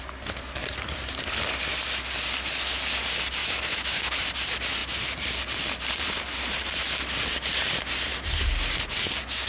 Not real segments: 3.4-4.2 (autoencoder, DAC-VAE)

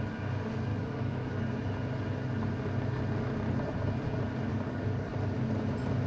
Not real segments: 0.7-1.3 (codec, DAC); 4.5-5.1

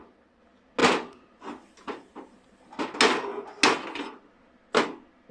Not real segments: none